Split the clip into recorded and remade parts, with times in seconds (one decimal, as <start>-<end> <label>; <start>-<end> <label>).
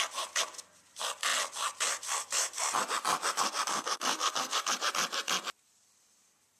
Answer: 0.0-3.7 recorded; 3.7-4.7 remade; 4.7-6.6 recorded